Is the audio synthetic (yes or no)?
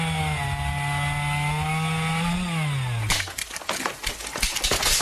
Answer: no